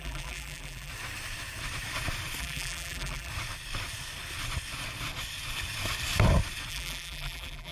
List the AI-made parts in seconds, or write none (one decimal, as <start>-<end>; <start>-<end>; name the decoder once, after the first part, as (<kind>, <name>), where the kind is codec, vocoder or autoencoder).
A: 0.0-0.9 (vocoder, BigVGAN v2); 2.4-3.3; 6.7-7.7